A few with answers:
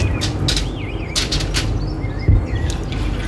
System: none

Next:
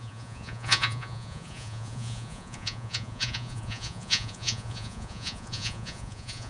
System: vocoder, Vocos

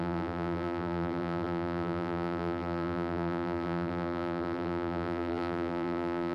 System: vocoder, BigVGAN v2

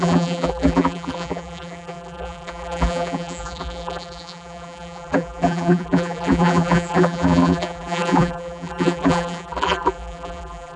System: vocoder, BigVGAN v2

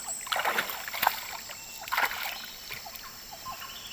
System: none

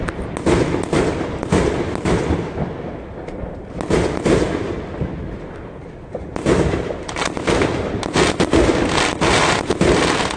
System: none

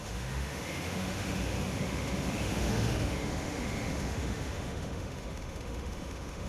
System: autoencoder, DAC-VAE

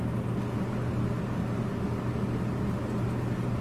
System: none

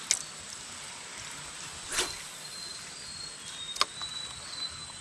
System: none